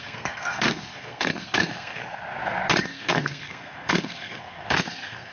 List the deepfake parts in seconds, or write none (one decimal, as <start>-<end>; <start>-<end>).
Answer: 0.0-2.0; 2.8-5.3